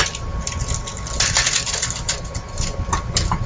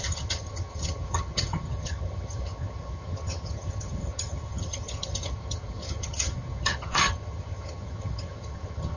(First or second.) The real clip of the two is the first